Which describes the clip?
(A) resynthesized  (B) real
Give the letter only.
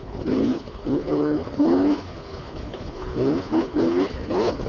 A